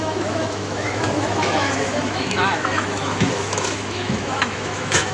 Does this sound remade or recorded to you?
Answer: remade